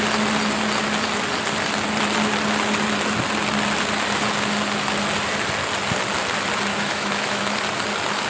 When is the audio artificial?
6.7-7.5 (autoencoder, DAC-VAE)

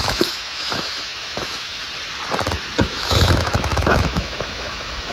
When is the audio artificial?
0.0-1.8 (autoencoder, DAC-VAE); 2.8-5.1

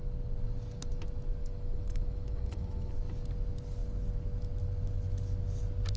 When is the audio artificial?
1.4-2.9 (autoencoder, DAC-VAE)